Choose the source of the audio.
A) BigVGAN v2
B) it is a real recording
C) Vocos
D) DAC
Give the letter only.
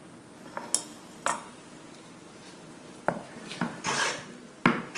B